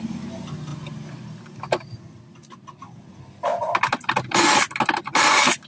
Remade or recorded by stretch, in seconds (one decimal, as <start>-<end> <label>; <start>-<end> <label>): 0.0-5.7 recorded